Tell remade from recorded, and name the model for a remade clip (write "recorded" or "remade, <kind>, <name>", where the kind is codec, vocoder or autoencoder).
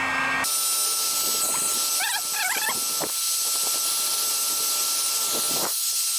recorded